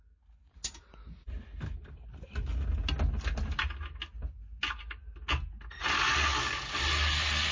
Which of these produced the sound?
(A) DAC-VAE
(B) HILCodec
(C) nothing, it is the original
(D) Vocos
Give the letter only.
C